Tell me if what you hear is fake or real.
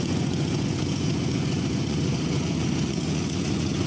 fake